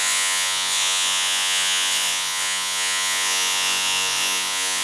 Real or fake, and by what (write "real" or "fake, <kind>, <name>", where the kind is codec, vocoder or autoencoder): fake, vocoder, Vocos